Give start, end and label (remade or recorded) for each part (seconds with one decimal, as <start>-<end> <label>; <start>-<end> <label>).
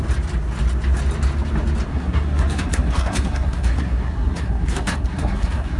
0.0-1.9 recorded; 1.9-5.8 remade